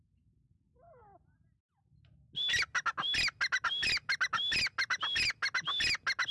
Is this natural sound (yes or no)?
yes